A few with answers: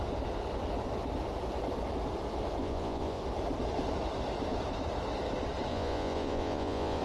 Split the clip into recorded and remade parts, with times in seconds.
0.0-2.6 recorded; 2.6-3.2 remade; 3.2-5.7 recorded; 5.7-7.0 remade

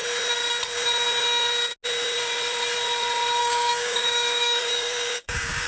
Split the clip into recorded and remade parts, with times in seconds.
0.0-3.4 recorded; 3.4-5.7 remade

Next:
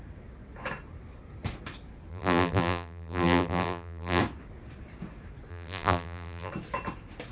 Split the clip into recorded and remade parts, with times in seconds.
0.0-2.1 recorded; 2.1-4.2 remade; 4.2-5.5 recorded; 5.5-6.5 remade; 6.5-7.3 recorded

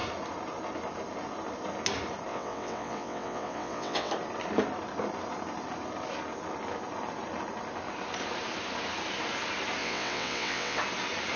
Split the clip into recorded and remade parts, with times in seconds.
0.0-2.3 recorded; 2.3-4.1 remade; 4.1-9.8 recorded; 9.8-10.8 remade; 10.8-11.4 recorded